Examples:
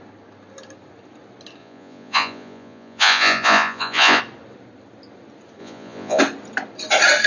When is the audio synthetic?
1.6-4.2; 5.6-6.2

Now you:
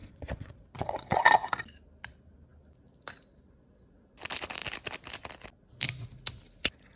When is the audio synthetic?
0.0-1.2

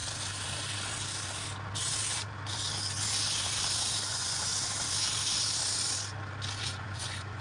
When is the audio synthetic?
4.1-4.5; 6.6-7.4

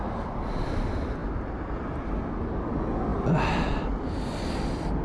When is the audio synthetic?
none

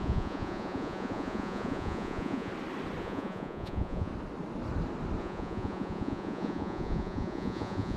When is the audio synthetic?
0.0-2.5; 3.0-4.1; 5.2-8.0

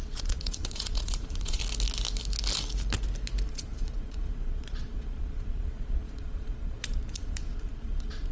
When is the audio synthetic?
0.0-1.6; 3.5-8.3

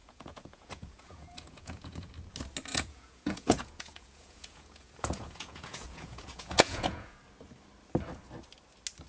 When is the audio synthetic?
0.0-2.1; 2.7-7.2

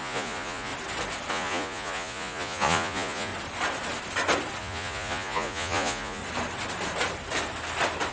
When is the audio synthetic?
0.0-0.7; 1.3-3.3; 4.6-6.2